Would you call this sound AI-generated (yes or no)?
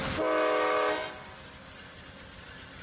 no